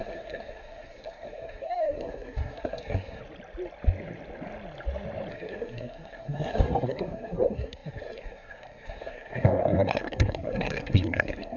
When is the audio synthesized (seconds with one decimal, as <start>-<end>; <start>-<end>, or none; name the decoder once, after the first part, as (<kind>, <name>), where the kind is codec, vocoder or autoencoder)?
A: 0.0-3.2 (codec, SNAC); 5.3-11.6